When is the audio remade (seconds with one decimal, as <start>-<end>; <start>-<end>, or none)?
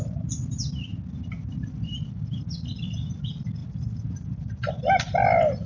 3.6-4.7